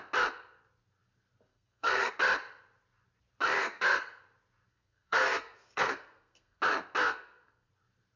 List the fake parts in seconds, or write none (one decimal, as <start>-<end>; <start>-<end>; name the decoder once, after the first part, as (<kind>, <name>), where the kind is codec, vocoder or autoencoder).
1.5-2.1 (codec, SNAC); 3.6-4.2; 4.7-6.6; 7.0-7.7